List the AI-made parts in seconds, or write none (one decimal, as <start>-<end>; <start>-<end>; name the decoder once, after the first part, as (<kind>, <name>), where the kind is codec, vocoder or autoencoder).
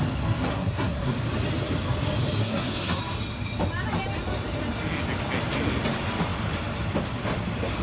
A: 0.5-1.1 (codec, SNAC); 2.4-3.0